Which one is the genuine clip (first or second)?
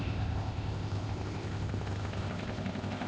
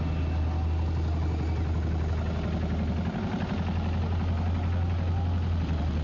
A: second